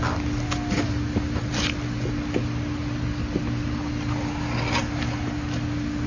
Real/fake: real